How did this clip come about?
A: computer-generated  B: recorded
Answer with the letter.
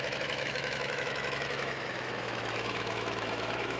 A